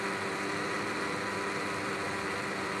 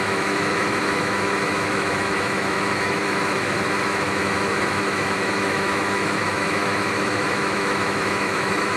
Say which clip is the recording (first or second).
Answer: first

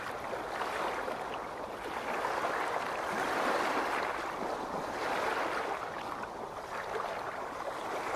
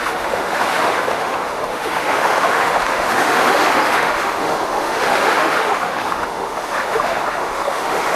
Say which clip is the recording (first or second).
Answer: first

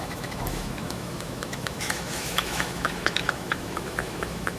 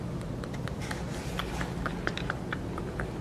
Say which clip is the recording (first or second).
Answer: second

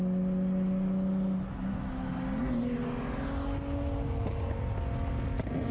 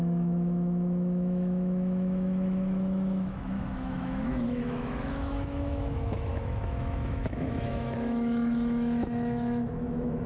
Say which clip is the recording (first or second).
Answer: first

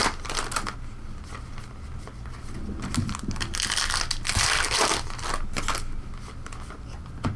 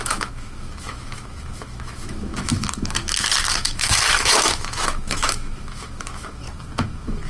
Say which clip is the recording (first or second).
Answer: first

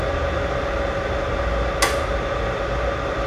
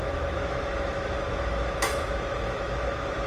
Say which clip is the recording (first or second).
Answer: first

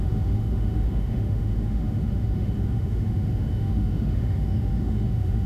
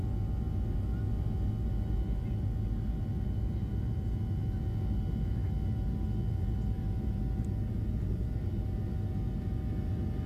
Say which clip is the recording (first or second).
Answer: second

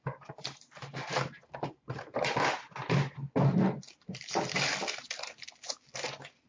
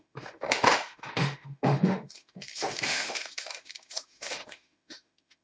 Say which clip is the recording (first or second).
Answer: first